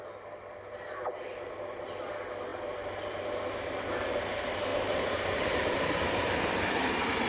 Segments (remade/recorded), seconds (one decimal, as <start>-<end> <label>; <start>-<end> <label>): 0.0-4.7 recorded; 4.7-6.1 remade; 6.1-7.3 recorded